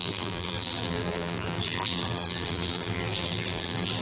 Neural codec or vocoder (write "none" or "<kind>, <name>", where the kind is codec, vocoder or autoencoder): vocoder, BigVGAN v2